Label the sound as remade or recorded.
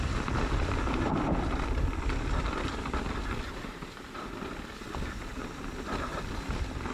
recorded